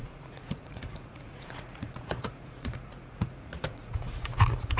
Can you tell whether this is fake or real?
fake